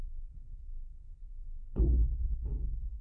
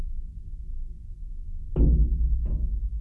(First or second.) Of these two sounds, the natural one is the second